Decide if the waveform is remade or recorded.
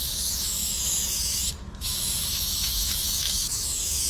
remade